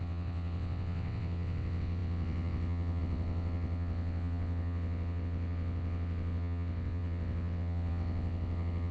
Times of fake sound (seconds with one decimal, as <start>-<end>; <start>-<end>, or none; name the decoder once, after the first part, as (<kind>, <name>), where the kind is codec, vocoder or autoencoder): 0.0-8.9 (vocoder, WaveNeXt)